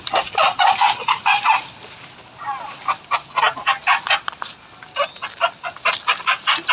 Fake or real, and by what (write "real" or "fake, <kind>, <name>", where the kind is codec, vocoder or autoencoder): real